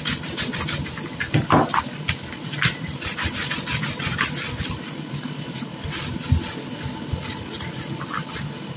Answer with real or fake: real